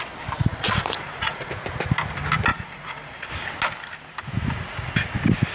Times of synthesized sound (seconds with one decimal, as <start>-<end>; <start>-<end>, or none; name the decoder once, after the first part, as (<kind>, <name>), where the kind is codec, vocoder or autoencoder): 0.5-1.5 (vocoder, Vocos); 2.5-3.3